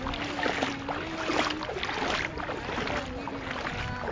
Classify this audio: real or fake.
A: real